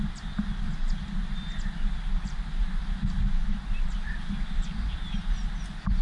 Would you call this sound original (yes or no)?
yes